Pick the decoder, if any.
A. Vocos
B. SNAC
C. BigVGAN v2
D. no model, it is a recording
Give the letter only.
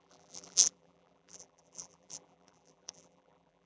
C